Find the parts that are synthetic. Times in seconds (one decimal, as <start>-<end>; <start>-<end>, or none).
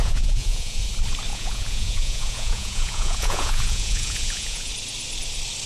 0.0-0.8; 1.3-4.7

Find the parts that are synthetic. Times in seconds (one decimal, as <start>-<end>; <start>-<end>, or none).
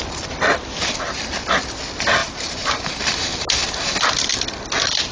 2.2-3.0